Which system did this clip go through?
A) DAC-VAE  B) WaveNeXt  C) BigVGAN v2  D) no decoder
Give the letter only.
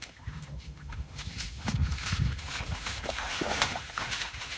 A